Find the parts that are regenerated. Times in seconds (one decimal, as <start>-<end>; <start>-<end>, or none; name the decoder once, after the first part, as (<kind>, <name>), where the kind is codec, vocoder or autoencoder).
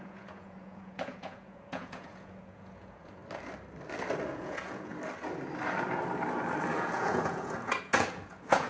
0.0-3.2 (vocoder, Vocos); 4.3-4.9; 6.7-8.7